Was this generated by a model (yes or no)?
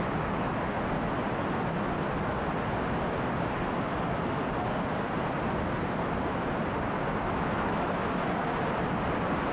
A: no